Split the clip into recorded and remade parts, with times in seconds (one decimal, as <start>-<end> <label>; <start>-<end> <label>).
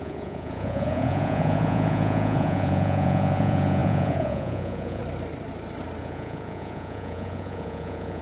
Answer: 0.0-5.0 remade; 5.0-6.0 recorded; 6.0-8.2 remade